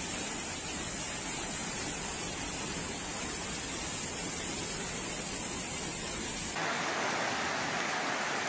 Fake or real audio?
real